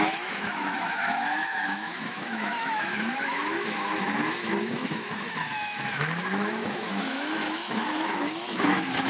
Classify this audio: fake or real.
fake